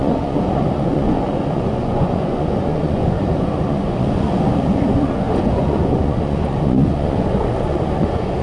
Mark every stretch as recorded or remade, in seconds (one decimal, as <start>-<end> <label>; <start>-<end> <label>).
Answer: 0.0-8.4 remade